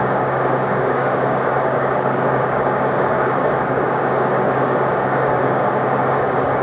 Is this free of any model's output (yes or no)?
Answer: no